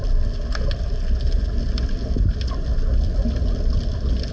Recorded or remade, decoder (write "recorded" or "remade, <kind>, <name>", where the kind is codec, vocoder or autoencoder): recorded